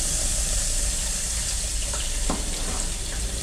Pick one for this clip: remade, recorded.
recorded